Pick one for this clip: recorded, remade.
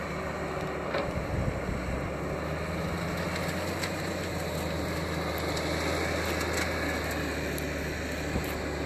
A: recorded